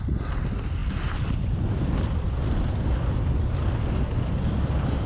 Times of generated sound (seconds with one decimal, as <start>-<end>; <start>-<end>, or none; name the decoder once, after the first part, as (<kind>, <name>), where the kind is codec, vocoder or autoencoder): 0.8-3.9 (vocoder, BigVGAN v2)